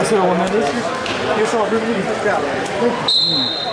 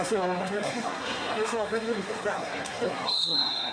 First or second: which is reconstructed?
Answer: second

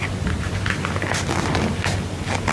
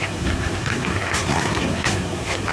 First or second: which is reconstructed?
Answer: second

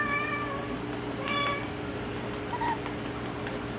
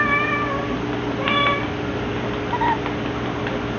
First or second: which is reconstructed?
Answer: first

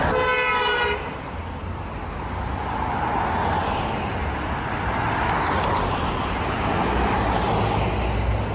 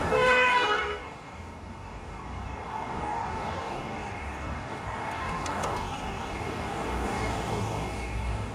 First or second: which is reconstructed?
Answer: second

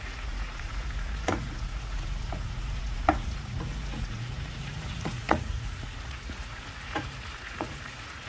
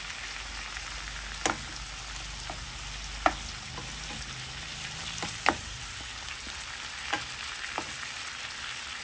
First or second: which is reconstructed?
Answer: first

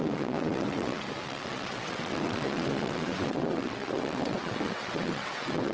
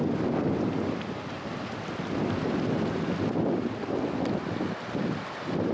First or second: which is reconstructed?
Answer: first